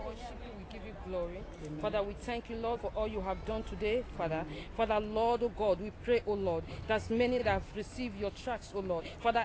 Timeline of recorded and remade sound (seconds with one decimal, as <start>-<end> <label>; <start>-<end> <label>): 0.0-9.4 recorded